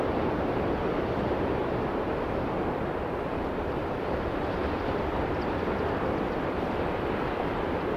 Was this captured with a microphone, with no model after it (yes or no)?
no